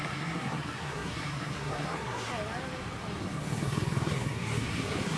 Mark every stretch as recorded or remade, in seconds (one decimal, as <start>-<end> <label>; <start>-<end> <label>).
0.0-2.3 remade; 2.3-3.2 recorded; 3.2-5.2 remade